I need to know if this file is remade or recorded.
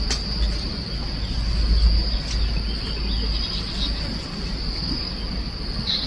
recorded